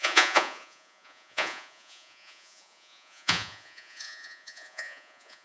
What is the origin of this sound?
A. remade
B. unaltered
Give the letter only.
A